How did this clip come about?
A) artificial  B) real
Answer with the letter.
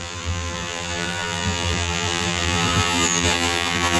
A